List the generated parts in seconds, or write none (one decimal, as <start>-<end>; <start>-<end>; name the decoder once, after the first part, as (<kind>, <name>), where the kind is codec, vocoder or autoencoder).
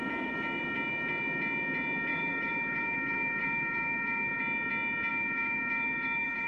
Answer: 2.1-4.4 (autoencoder, DAC-VAE); 5.1-6.5